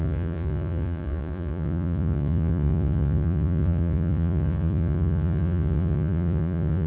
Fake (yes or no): yes